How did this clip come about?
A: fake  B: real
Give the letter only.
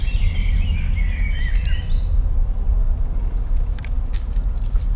B